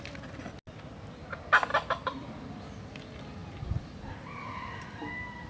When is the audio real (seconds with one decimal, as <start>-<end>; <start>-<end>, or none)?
0.0-1.7; 2.6-3.4; 4.3-5.5